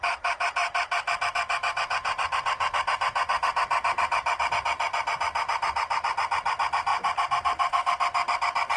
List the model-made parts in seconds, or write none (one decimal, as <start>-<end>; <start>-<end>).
0.6-4.5